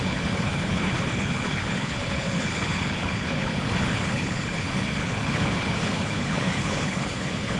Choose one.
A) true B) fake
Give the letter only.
B